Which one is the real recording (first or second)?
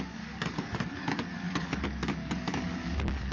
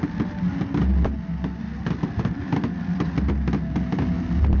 second